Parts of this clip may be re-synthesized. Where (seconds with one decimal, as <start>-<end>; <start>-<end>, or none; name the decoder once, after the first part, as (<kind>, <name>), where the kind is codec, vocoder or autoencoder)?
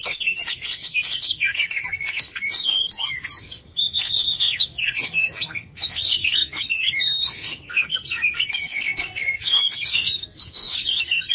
0.0-11.3 (codec, SNAC)